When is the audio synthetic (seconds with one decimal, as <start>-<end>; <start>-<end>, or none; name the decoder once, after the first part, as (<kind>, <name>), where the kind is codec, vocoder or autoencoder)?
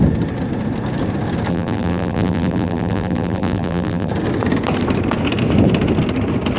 1.5-4.1 (vocoder, BigVGAN v2)